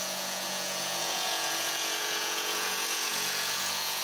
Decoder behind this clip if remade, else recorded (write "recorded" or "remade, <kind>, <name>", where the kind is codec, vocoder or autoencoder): remade, vocoder, Vocos